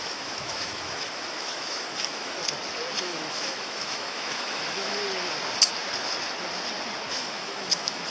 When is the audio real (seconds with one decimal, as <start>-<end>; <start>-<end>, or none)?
2.4-3.0; 5.0-7.1